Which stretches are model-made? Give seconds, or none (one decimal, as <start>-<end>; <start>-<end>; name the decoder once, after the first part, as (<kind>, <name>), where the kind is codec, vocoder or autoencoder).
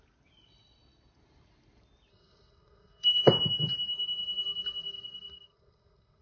2.1-3.3 (codec, SNAC); 3.9-6.2